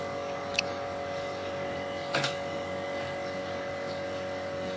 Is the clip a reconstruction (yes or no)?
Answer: yes